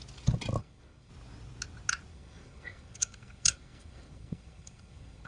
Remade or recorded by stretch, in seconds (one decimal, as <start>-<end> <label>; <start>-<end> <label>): 0.0-0.6 recorded; 0.6-1.1 remade; 1.1-2.1 recorded; 2.1-5.3 remade